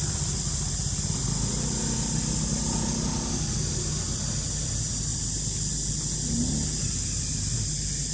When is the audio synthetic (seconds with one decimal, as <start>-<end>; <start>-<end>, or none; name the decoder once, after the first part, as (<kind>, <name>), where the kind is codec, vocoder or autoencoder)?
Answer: 0.0-1.3 (vocoder, BigVGAN v2)